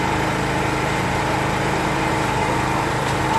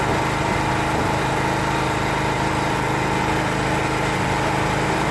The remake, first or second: first